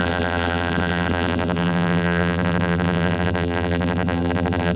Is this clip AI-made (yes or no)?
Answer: yes